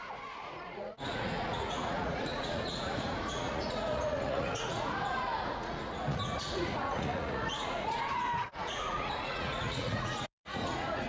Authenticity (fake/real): fake